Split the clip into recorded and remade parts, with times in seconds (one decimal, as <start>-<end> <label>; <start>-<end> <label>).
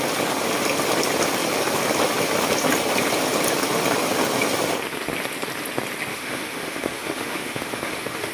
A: 0.0-6.1 recorded; 6.1-8.3 remade